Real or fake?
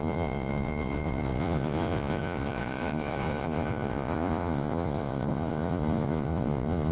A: fake